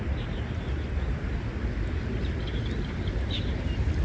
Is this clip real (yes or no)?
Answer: yes